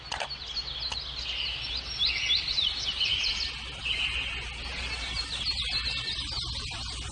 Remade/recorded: recorded